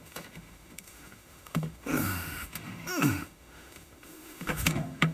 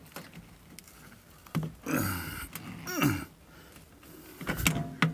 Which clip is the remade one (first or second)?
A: first